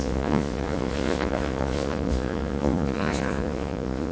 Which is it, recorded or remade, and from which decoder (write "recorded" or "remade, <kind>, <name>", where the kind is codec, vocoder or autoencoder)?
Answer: remade, vocoder, Vocos